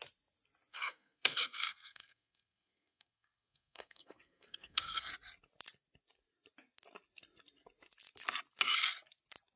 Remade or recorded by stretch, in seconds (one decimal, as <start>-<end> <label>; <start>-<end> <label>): 0.0-0.7 recorded; 0.7-5.1 remade; 5.1-9.6 recorded